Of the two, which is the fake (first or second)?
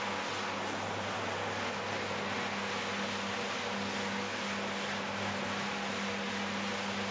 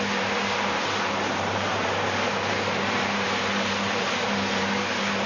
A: second